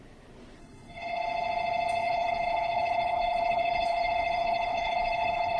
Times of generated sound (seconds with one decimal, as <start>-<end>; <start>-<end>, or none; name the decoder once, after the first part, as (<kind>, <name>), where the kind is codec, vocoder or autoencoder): 0.6-1.2 (codec, HILCodec); 2.0-5.6